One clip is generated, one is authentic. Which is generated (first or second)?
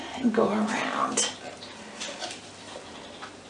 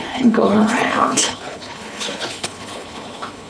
second